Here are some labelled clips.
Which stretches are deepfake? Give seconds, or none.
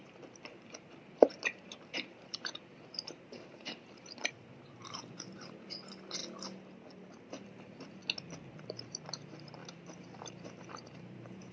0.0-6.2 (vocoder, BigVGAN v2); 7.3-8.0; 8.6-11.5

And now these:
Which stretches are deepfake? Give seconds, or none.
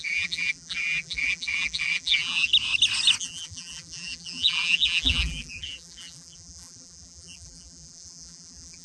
0.0-2.5 (vocoder, BigVGAN v2); 3.2-8.8